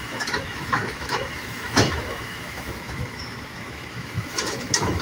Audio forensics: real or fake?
fake